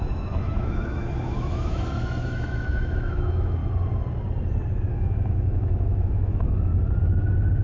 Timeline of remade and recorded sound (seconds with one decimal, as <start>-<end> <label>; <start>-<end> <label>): 0.0-3.6 remade; 3.6-4.9 recorded; 4.9-6.7 remade; 6.7-7.6 recorded